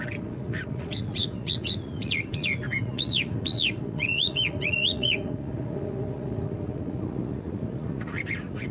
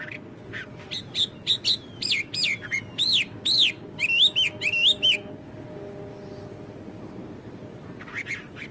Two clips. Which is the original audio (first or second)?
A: second